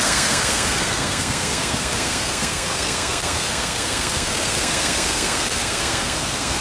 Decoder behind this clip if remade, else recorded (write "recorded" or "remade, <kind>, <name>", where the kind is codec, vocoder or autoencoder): remade, codec, SNAC